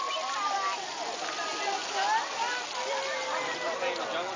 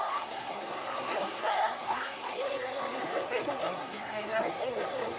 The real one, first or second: first